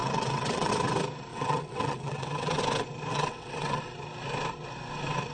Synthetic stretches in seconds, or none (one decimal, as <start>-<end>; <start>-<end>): 0.0-0.7; 1.3-2.6; 3.1-3.8